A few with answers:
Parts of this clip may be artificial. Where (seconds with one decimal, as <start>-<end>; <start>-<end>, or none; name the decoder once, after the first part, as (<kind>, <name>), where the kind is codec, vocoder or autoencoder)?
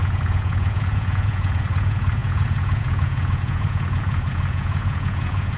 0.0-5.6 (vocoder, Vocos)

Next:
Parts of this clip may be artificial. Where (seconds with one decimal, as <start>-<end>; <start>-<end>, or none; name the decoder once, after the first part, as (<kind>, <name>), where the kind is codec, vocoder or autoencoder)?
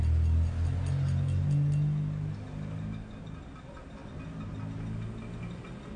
none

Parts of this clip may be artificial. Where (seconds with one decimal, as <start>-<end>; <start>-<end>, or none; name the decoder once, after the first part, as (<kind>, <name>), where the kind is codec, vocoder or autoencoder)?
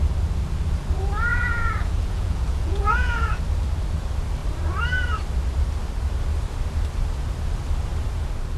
1.3-3.4 (vocoder, Vocos)